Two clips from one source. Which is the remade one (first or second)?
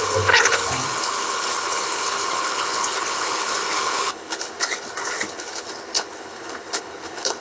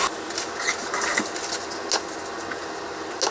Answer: first